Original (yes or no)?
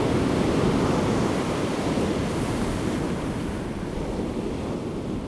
yes